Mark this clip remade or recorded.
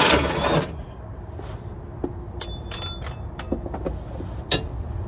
recorded